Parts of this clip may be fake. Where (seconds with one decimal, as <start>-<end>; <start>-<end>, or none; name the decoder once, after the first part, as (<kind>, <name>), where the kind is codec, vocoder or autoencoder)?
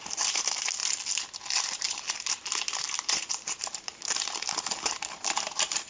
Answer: 0.0-0.8 (vocoder, BigVGAN v2); 1.6-5.9